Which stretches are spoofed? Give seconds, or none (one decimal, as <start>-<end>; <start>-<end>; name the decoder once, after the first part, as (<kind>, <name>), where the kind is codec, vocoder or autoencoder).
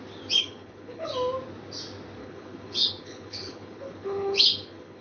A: 0.4-1.1 (codec, HILCodec); 2.2-5.0